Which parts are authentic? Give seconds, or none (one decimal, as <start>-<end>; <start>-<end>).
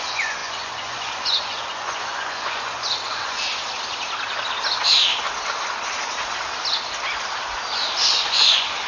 3.5-8.1